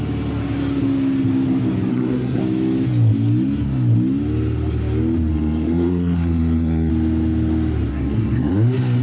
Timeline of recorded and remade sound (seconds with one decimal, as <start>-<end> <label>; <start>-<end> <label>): 0.0-1.9 recorded; 1.9-2.4 remade; 2.4-5.3 recorded; 5.3-6.9 remade; 6.9-7.9 recorded; 7.9-8.5 remade; 8.5-9.0 recorded